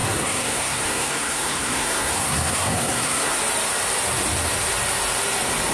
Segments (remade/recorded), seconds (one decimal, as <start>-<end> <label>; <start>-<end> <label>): 0.0-3.4 remade; 3.4-5.7 recorded